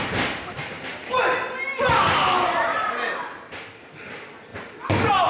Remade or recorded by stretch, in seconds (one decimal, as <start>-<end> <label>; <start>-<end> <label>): 0.0-5.3 recorded